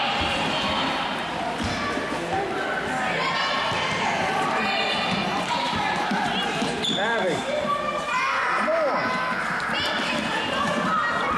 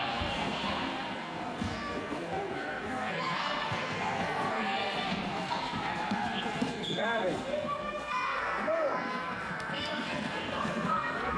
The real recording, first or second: first